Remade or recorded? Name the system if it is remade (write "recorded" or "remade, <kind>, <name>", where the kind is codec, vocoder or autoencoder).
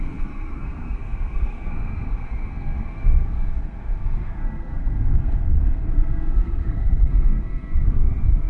remade, codec, SNAC